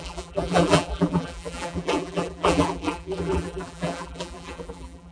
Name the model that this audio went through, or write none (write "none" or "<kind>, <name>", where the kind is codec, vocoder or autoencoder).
vocoder, BigVGAN v2